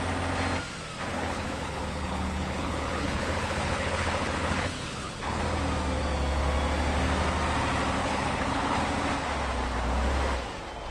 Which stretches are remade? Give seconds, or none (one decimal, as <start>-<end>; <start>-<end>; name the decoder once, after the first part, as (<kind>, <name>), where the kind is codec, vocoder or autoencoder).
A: 1.1-5.4 (codec, HILCodec); 8.0-8.8